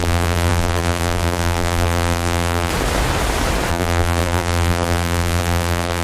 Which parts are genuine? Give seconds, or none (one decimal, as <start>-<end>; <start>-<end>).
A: 2.7-3.7